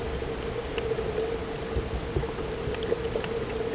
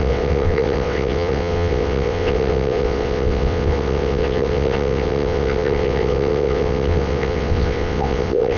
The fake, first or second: second